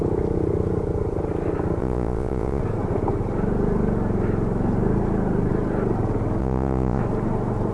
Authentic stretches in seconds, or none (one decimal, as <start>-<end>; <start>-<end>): 0.0-1.8; 2.6-6.4; 7.0-7.7